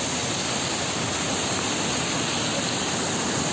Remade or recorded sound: recorded